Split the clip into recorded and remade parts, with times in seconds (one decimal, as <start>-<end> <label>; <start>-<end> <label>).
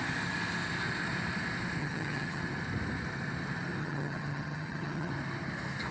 0.0-1.8 recorded; 1.8-2.4 remade; 2.4-3.8 recorded; 3.8-5.1 remade; 5.1-5.9 recorded